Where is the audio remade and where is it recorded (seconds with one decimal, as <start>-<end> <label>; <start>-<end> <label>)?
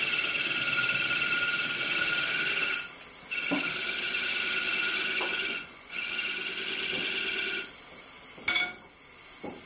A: 0.0-5.3 recorded; 5.3-6.1 remade; 6.1-9.7 recorded